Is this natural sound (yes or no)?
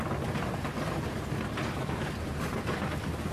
yes